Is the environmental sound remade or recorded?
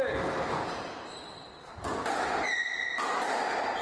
recorded